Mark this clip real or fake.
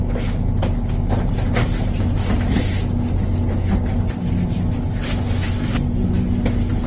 real